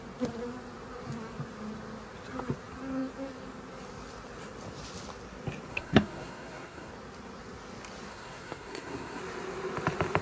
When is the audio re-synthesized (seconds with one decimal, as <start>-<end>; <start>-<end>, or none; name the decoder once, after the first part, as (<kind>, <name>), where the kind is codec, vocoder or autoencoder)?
5.7-6.9 (codec, SNAC); 8.1-9.2